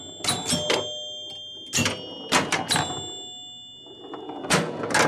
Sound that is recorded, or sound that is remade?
recorded